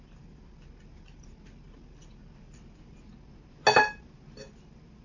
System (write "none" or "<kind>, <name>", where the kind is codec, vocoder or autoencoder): none